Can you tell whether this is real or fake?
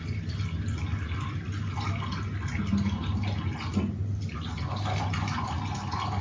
real